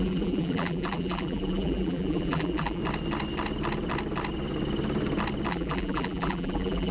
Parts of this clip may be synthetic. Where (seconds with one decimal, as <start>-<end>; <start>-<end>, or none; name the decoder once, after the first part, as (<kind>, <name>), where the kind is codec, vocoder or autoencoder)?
0.0-2.8 (vocoder, BigVGAN v2); 5.5-6.9

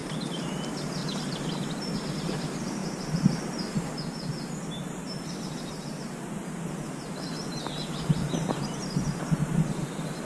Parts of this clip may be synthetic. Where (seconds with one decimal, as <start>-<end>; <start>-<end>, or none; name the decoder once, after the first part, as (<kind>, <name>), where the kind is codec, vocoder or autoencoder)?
0.0-0.5 (vocoder, BigVGAN v2); 1.0-1.8; 7.3-9.2

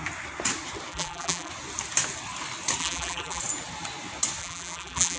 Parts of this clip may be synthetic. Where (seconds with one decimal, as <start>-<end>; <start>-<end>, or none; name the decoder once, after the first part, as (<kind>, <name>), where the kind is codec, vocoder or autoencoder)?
0.9-1.5 (vocoder, BigVGAN v2); 2.8-3.4; 4.4-5.2

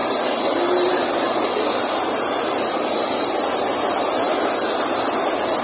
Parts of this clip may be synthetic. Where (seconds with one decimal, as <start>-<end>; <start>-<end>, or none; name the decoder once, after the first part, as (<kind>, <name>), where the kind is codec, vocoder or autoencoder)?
0.0-3.4 (vocoder, BigVGAN v2)

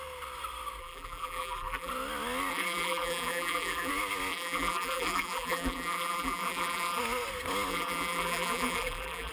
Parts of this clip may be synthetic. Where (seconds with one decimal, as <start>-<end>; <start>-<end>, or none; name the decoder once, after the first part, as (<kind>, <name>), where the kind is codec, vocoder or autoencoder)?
0.8-1.9 (vocoder, BigVGAN v2); 2.5-3.9; 4.3-7.0; 7.7-9.3

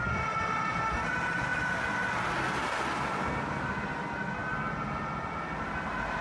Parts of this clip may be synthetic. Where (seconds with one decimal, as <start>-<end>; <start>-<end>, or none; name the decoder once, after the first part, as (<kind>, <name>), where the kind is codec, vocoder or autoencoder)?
none

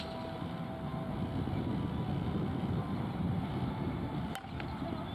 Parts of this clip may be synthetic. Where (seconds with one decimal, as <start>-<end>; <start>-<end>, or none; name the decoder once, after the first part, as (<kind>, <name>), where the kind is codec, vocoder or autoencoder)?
0.9-1.6 (vocoder, BigVGAN v2); 2.6-3.7